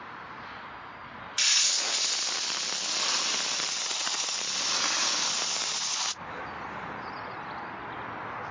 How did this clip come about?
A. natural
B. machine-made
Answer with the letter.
A